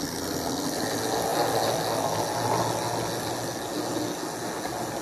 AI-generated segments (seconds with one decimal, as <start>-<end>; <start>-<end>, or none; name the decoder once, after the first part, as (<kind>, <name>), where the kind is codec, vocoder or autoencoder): none